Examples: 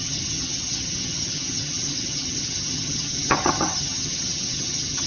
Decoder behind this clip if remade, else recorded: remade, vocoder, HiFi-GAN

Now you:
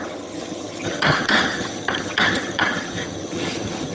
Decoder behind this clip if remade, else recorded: remade, vocoder, HiFi-GAN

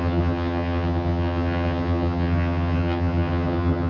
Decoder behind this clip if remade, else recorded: remade, vocoder, HiFi-GAN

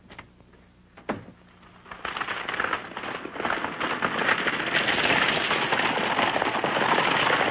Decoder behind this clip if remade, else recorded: recorded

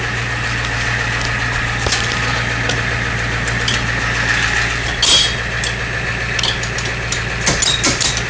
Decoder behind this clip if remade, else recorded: recorded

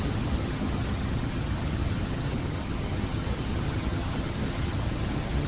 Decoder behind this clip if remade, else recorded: remade, vocoder, HiFi-GAN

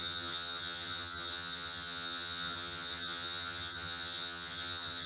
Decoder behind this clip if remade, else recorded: remade, vocoder, HiFi-GAN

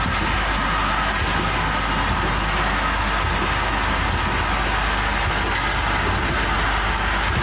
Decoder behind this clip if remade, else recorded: recorded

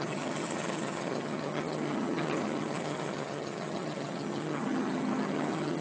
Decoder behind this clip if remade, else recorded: remade, vocoder, HiFi-GAN